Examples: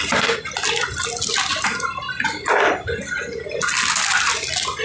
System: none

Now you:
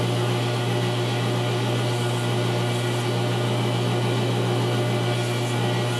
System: none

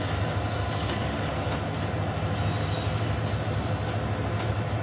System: none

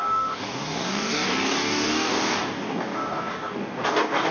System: codec, DAC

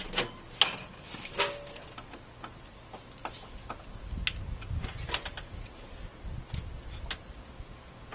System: none